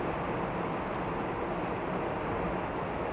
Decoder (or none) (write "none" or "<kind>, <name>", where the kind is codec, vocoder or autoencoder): none